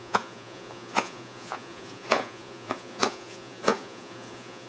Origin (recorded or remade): remade